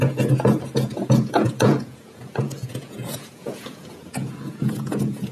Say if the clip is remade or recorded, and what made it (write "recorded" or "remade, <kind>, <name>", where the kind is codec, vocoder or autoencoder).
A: remade, vocoder, Vocos